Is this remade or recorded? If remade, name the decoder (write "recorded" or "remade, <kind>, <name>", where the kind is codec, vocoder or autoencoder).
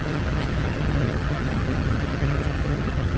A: remade, vocoder, HiFi-GAN